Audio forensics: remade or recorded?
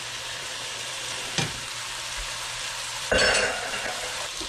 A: remade